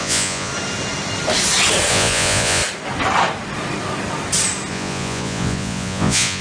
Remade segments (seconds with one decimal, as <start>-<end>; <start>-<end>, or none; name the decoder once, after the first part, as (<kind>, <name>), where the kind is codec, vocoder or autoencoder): 0.0-0.5 (vocoder, Vocos); 1.9-2.6; 4.7-6.4